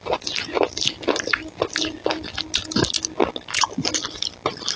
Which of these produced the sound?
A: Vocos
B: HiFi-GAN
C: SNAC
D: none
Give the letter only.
D